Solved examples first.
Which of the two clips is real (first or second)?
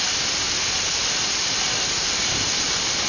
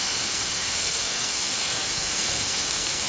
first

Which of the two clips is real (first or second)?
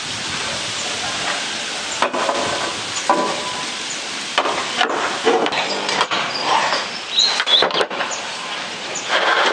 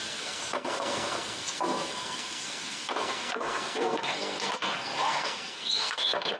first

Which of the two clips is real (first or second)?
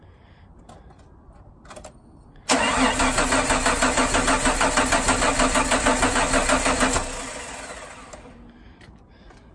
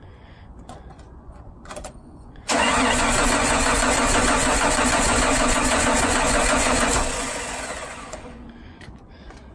first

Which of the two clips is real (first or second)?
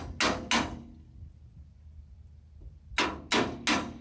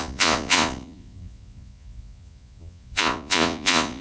first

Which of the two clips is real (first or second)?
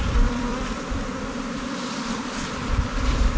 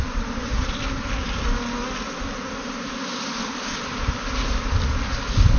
second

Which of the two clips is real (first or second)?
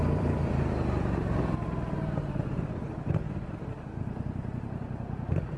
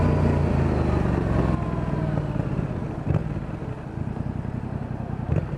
second